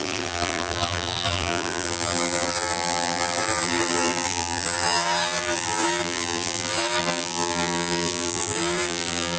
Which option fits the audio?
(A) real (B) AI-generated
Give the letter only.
B